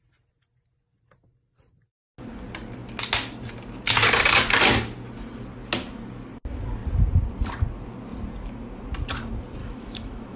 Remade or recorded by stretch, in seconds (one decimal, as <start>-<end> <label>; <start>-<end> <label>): 0.0-9.6 recorded; 9.6-10.4 remade